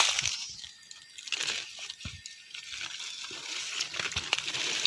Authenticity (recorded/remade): recorded